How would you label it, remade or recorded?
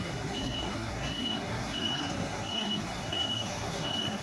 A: remade